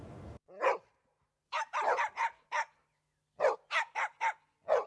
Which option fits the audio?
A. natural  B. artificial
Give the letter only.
A